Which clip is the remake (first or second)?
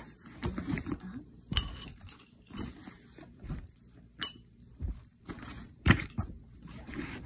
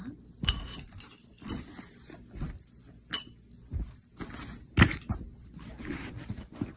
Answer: first